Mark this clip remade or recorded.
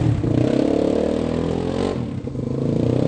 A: recorded